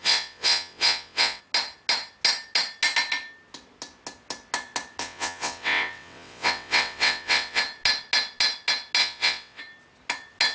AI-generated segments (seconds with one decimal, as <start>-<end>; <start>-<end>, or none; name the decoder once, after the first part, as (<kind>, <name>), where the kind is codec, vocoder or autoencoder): 0.0-1.4 (vocoder, WaveNeXt); 5.0-7.6; 9.0-9.6